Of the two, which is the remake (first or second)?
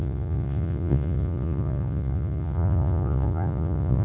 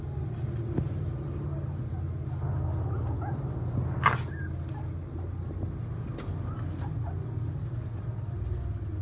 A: first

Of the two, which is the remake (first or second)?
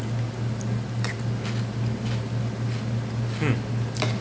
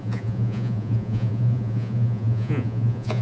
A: second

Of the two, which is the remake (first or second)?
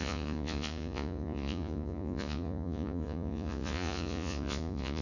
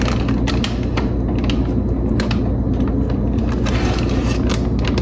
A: first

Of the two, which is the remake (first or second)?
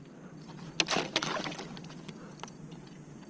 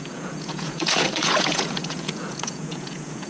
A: second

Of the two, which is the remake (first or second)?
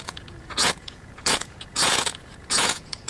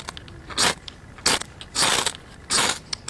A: first